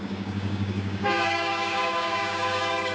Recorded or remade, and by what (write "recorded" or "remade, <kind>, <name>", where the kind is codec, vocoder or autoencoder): remade, codec, DAC